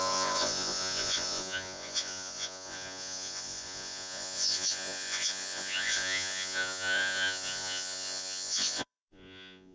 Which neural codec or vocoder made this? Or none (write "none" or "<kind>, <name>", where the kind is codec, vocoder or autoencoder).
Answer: vocoder, Vocos